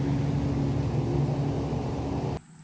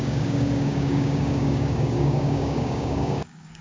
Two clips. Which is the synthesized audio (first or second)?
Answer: second